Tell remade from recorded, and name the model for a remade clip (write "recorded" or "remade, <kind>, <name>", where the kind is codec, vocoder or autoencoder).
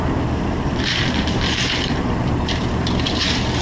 remade, vocoder, BigVGAN v2